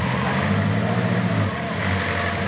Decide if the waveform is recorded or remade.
recorded